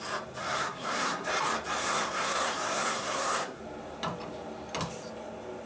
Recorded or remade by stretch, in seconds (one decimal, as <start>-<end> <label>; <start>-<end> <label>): 0.0-0.4 recorded; 0.4-1.3 remade; 1.3-1.8 recorded; 1.8-3.6 remade; 3.6-5.7 recorded